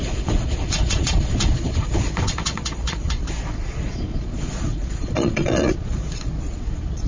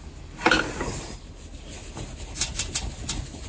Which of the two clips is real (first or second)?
second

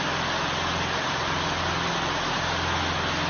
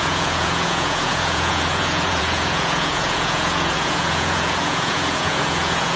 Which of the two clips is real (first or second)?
first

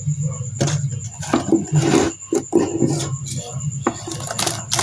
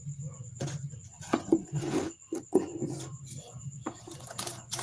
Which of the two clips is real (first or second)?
first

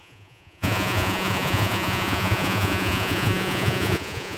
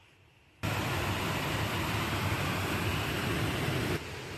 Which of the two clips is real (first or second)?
second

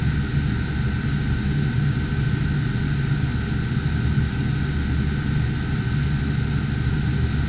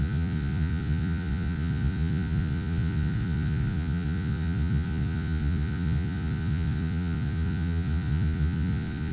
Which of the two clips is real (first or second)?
first